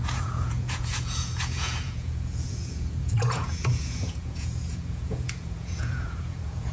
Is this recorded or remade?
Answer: remade